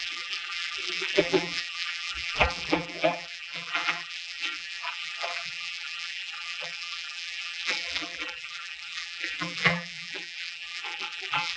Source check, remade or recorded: remade